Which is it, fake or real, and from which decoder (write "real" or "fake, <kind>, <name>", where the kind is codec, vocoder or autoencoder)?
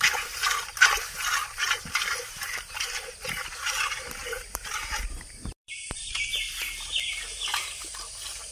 fake, vocoder, BigVGAN v2